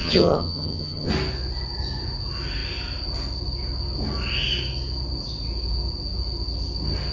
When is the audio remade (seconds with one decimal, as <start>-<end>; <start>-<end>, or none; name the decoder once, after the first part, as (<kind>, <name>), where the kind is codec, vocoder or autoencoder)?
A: 0.0-1.1 (vocoder, HiFi-GAN)